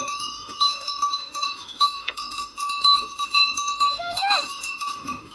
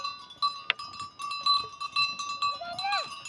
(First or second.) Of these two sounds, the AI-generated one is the first